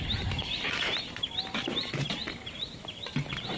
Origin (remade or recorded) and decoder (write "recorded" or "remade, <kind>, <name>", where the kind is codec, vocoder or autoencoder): remade, vocoder, BigVGAN v2